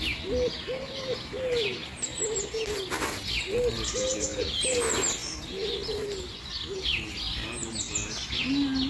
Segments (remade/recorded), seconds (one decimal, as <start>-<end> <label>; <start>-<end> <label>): 0.0-8.9 recorded